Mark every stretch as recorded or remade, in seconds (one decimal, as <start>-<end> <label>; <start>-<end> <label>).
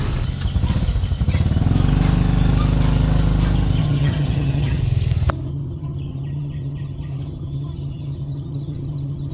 0.0-3.8 recorded; 3.8-4.8 remade; 4.8-5.5 recorded; 5.5-9.3 remade